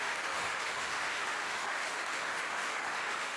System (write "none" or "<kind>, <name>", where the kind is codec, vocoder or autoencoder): autoencoder, DAC-VAE